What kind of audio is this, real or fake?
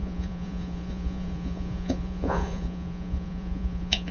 fake